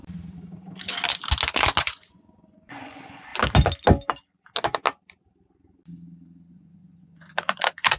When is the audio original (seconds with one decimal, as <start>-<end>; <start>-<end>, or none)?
0.0-1.8; 3.3-6.5